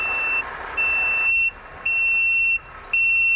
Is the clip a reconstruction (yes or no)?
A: no